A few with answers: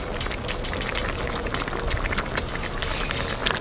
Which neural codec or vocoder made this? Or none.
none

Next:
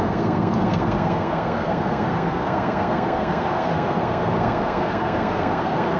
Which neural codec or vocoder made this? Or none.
codec, SNAC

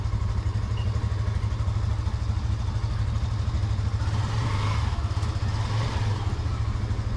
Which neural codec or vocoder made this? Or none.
none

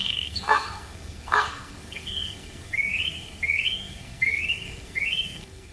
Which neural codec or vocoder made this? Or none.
codec, SNAC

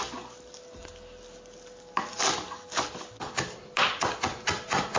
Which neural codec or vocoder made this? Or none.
none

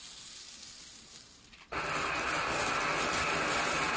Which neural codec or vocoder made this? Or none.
none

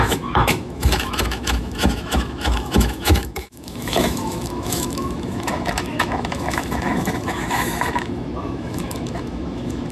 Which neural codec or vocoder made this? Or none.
autoencoder, DAC-VAE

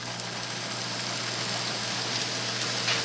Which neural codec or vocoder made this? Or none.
none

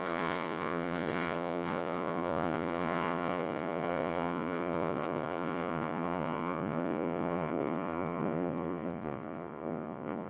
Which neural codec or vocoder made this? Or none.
vocoder, Vocos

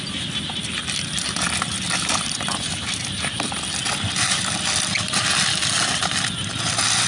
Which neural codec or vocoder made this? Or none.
none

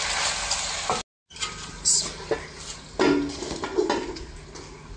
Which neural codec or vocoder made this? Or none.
none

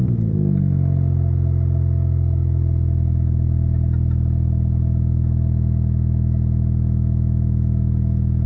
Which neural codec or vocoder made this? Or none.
none